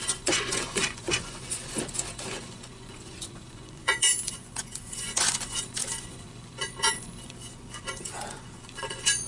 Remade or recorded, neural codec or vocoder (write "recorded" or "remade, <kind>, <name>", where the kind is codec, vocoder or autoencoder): remade, vocoder, Vocos